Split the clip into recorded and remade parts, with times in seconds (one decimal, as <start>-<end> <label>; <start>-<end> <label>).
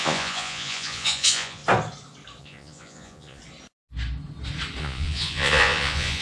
0.0-1.6 remade; 1.6-2.4 recorded; 2.4-3.4 remade; 3.4-4.8 recorded; 4.8-6.2 remade